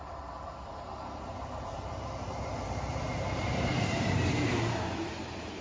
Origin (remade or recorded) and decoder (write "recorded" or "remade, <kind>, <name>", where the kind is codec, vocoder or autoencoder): remade, vocoder, BigVGAN v2